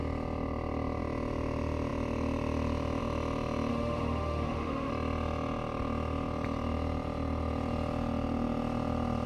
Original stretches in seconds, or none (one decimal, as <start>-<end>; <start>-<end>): 0.0-3.7; 4.9-9.3